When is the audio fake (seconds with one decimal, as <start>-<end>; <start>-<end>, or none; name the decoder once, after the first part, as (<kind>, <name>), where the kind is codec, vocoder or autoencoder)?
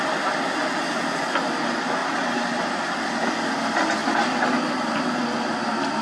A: 4.0-5.6 (vocoder, BigVGAN v2)